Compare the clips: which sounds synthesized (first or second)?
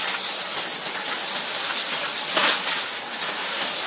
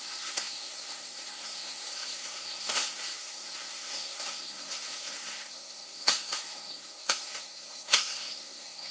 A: second